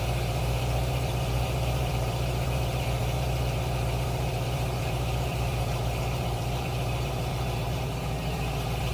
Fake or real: fake